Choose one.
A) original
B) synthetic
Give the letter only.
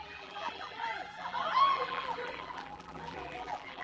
B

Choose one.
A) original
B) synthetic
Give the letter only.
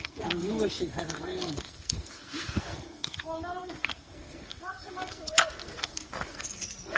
B